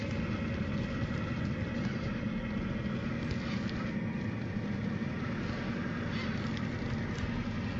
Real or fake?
real